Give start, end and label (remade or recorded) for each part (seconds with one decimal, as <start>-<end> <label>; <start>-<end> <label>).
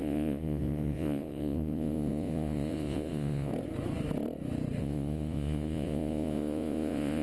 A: 0.0-3.5 remade; 3.5-4.8 recorded; 4.8-7.2 remade